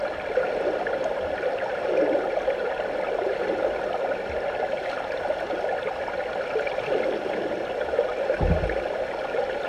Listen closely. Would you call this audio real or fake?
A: real